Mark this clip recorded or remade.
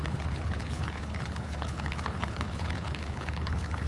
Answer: remade